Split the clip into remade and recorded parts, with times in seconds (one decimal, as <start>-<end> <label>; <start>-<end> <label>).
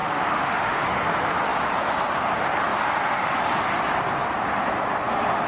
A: 0.0-0.8 remade; 0.8-5.5 recorded